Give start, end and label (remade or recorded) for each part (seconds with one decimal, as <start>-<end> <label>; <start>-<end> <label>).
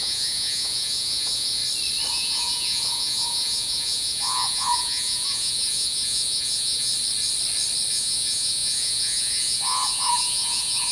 0.0-1.6 remade; 1.6-2.1 recorded; 2.1-6.9 remade; 6.9-7.9 recorded; 7.9-10.9 remade